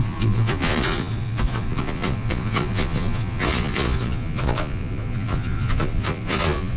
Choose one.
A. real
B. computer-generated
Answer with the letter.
B